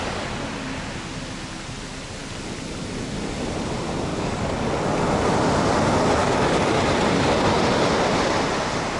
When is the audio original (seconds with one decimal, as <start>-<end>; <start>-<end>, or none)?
0.0-4.1; 4.7-6.2; 6.8-9.0